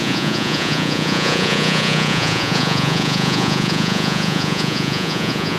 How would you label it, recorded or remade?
remade